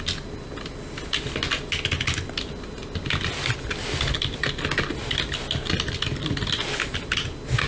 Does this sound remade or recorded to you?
recorded